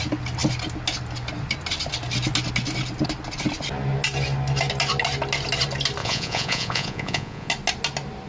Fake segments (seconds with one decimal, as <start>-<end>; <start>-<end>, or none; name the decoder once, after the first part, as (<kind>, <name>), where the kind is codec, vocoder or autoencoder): 6.0-7.5 (vocoder, Vocos)